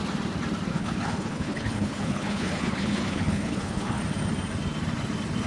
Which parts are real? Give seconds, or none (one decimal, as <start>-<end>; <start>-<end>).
0.0-0.7; 4.0-5.5

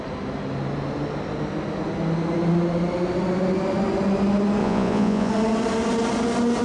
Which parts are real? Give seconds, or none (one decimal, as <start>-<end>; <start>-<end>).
0.0-4.6; 5.3-6.6

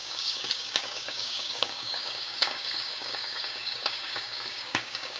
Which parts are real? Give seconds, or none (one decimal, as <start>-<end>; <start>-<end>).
none

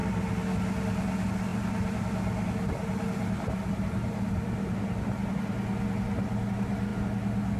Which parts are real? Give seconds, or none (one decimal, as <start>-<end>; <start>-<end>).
0.0-1.5; 5.0-7.6

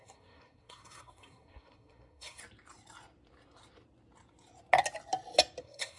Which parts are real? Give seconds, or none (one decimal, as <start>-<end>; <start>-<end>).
2.4-5.6

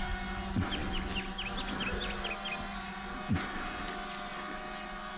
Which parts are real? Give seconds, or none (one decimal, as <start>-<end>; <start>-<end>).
0.0-5.2

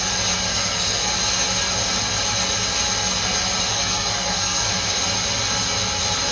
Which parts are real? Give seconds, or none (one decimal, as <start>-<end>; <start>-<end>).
0.0-0.5; 1.1-3.7; 4.7-6.3

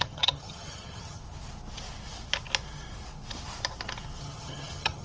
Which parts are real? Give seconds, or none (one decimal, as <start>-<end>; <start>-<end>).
1.2-4.2